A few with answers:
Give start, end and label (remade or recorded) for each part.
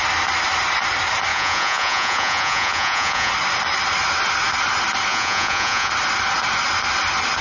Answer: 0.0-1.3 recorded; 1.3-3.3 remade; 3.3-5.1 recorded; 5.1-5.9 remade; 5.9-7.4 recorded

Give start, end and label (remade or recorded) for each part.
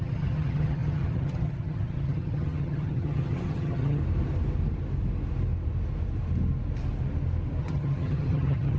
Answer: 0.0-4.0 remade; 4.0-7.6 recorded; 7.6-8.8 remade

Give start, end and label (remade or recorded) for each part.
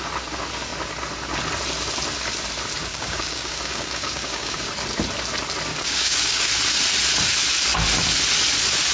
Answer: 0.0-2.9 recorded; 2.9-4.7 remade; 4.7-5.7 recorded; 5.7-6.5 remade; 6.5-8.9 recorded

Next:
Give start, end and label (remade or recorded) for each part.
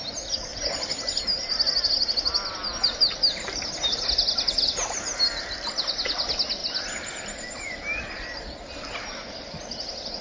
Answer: 0.0-10.2 recorded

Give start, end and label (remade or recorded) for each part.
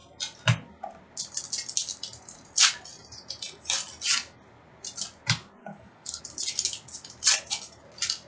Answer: 0.0-5.6 recorded; 5.6-6.2 remade; 6.2-8.3 recorded